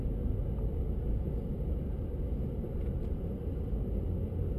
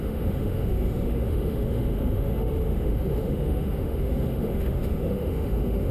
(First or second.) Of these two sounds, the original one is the first